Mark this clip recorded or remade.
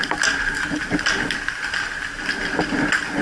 recorded